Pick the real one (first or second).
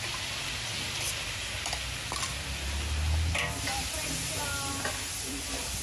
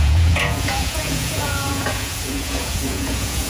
first